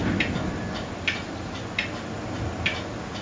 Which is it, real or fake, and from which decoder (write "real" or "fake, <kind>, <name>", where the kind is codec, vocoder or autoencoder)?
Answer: real